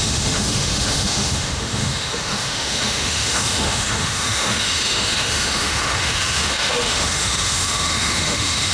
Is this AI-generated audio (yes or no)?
yes